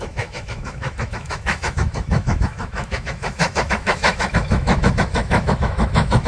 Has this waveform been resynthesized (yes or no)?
yes